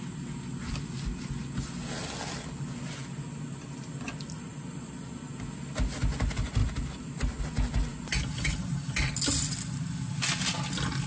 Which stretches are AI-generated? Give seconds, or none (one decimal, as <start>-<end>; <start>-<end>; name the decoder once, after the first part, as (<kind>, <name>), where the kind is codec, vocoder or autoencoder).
none